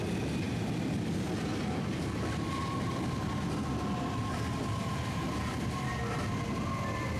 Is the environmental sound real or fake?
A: real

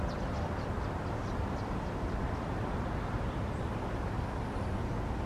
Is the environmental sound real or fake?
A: real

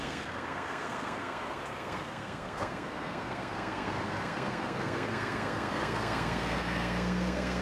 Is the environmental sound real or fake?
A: fake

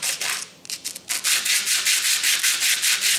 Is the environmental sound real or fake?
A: real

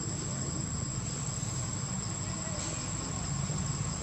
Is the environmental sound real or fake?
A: real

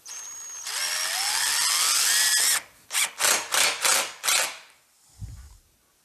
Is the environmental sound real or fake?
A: real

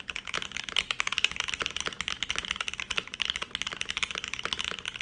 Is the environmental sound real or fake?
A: real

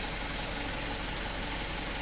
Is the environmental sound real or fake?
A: real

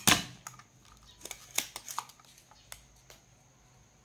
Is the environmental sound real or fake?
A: real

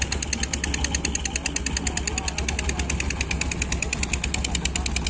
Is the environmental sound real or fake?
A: real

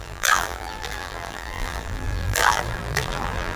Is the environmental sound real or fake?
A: fake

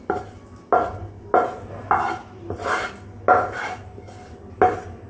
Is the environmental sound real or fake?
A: real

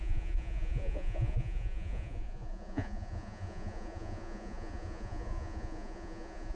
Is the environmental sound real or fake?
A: fake